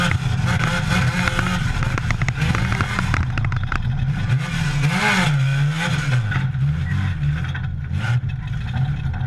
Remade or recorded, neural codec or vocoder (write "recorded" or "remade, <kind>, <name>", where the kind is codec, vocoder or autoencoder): recorded